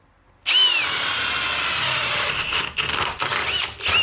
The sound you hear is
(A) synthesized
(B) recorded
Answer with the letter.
B